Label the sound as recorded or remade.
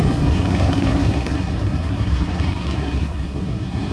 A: remade